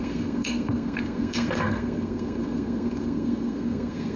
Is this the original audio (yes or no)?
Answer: no